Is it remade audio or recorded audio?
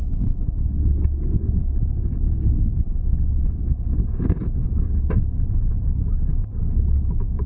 recorded